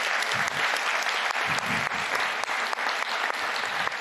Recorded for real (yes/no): yes